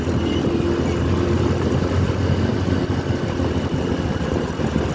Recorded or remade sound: recorded